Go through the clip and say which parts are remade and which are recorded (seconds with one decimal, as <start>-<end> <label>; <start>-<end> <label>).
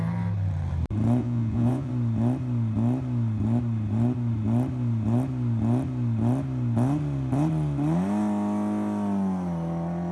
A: 0.0-1.2 recorded; 1.2-1.9 remade; 1.9-10.1 recorded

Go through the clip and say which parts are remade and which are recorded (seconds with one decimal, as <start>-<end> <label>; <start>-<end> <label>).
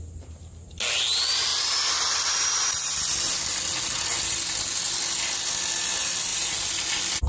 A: 0.0-1.5 recorded; 1.5-4.6 remade; 4.6-6.3 recorded; 6.3-7.3 remade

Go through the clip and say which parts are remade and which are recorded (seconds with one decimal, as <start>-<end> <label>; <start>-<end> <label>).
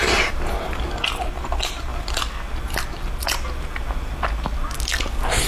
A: 0.0-5.5 recorded